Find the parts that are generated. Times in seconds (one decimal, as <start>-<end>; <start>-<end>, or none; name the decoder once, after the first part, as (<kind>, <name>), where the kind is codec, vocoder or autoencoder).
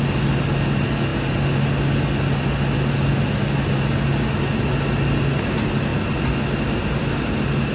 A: none